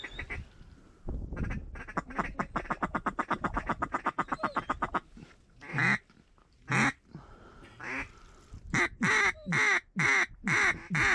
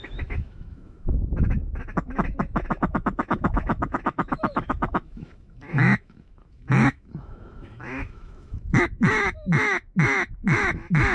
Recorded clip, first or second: first